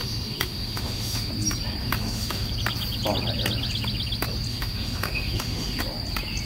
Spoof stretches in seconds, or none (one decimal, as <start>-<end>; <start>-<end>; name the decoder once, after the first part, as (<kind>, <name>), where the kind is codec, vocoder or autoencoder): 0.0-1.3 (autoencoder, DAC-VAE); 1.8-2.5; 4.5-5.8